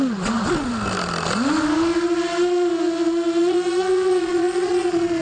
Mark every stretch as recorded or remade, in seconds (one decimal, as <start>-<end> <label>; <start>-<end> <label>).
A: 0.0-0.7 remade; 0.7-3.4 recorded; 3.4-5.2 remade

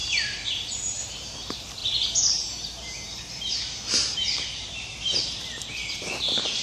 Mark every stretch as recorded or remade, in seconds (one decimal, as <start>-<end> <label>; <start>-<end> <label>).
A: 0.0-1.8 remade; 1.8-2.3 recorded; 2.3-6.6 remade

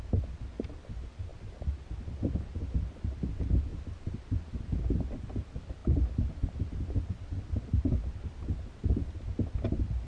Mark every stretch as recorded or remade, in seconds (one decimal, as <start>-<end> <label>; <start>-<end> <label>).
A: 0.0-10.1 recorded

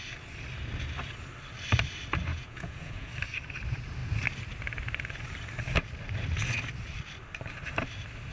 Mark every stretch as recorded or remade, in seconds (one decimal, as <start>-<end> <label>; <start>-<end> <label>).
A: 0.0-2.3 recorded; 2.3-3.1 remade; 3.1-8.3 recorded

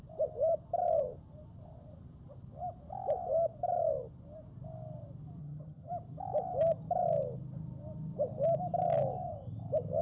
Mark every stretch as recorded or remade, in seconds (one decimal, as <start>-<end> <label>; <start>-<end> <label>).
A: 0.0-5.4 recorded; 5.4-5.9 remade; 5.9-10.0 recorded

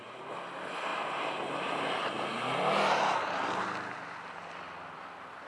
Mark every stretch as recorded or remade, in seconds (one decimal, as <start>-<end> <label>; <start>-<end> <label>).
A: 0.0-5.5 recorded

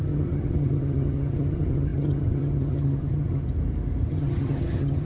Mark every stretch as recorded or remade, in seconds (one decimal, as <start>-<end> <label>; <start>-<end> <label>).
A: 0.0-3.4 remade; 3.4-4.1 recorded; 4.1-5.0 remade

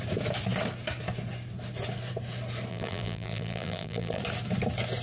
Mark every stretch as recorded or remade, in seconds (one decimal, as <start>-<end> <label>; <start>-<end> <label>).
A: 0.0-2.7 recorded; 2.7-4.2 remade; 4.2-5.0 recorded